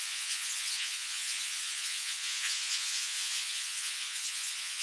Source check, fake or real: fake